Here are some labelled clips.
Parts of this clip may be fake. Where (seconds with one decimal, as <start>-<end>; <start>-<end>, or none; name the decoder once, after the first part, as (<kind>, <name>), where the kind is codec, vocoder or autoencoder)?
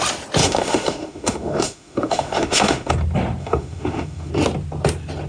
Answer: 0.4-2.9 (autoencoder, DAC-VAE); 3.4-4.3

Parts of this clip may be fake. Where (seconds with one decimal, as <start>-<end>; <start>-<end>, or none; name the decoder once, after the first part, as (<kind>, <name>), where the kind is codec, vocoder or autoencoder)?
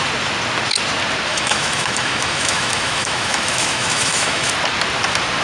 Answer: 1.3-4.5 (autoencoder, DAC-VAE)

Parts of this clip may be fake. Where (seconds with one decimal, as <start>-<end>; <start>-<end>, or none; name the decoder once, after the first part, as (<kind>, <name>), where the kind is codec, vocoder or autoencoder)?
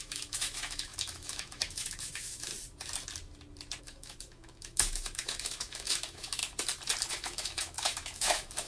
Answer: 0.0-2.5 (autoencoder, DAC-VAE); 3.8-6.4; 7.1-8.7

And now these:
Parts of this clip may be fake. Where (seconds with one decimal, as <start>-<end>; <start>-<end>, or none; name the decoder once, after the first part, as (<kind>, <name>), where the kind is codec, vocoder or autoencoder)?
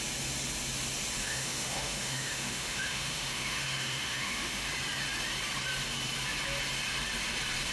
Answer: 1.2-4.7 (autoencoder, DAC-VAE)